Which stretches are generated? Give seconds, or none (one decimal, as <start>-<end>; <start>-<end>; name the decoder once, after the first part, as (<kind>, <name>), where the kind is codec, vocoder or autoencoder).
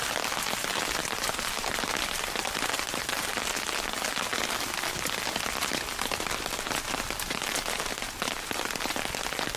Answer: none